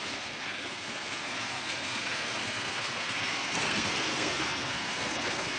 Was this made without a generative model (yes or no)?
no